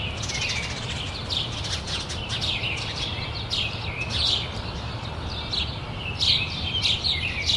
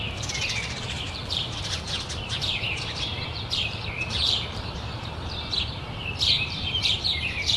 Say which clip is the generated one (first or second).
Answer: second